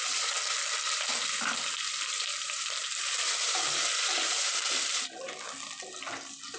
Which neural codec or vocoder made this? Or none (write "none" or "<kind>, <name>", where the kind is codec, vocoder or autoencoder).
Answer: none